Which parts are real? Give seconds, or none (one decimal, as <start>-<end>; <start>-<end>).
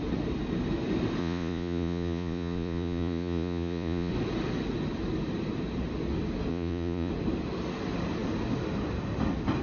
0.0-1.2; 4.1-6.5; 7.1-9.6